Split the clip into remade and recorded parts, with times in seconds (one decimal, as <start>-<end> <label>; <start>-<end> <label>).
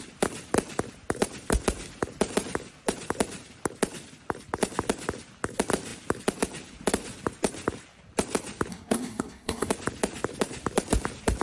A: 0.0-8.7 recorded; 8.7-9.7 remade; 9.7-11.4 recorded